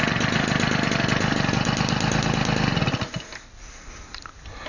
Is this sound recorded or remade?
recorded